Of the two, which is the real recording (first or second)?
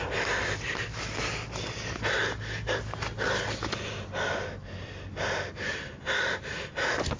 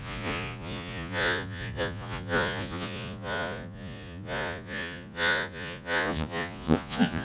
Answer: first